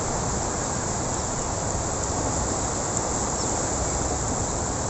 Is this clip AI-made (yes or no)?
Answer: no